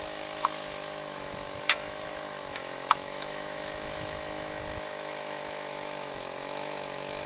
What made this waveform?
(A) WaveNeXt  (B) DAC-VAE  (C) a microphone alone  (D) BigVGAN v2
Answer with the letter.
B